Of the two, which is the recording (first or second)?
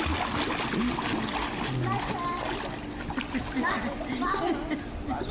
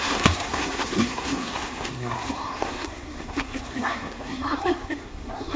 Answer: first